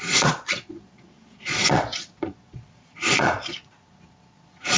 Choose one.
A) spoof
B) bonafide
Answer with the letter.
A